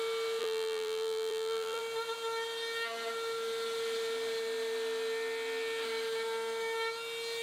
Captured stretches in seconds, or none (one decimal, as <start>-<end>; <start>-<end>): 0.0-0.4; 1.8-7.4